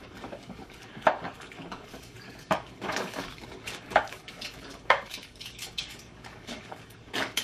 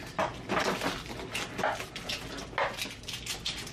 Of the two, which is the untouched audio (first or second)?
second